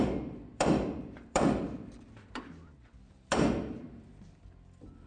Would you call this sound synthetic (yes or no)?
yes